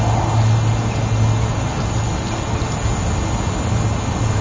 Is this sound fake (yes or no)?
no